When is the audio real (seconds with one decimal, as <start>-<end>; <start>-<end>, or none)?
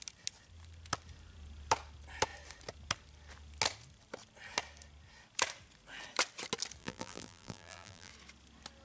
0.0-6.8; 8.1-8.8